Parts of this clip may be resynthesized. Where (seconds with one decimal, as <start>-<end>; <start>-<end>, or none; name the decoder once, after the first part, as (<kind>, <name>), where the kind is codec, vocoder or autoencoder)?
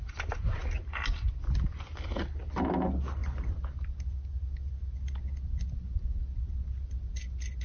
none